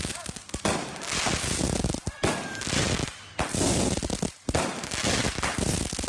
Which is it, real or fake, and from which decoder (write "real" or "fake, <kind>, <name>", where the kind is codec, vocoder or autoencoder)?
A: real